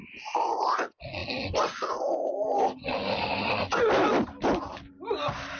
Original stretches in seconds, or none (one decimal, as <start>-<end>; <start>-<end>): 0.0-5.6